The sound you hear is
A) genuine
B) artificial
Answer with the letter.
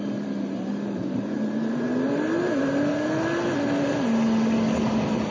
A